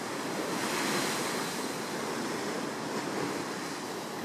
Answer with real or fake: real